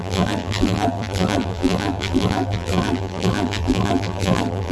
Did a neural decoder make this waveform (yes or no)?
yes